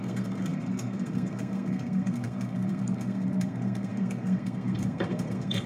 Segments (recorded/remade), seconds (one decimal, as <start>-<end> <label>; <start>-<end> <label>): 0.0-5.7 remade